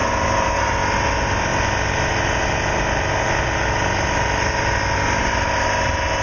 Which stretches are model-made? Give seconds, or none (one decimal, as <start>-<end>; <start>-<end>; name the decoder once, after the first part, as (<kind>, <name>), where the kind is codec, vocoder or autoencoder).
0.0-0.8 (vocoder, BigVGAN v2)